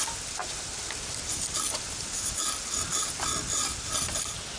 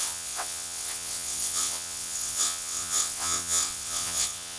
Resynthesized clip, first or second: second